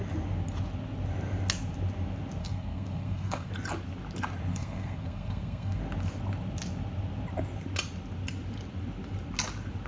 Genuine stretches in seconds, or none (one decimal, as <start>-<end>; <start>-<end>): 0.0-2.4; 3.5-4.5; 5.8-9.9